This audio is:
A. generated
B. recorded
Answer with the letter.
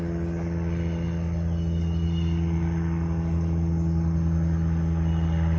B